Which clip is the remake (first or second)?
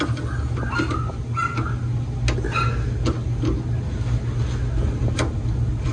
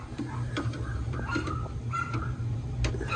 second